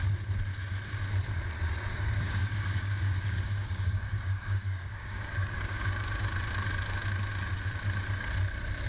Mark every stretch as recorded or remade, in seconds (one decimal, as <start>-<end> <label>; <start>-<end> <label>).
0.0-1.9 recorded; 1.9-5.8 remade; 5.8-8.9 recorded